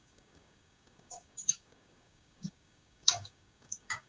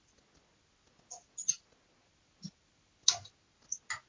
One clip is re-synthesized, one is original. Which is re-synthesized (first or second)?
first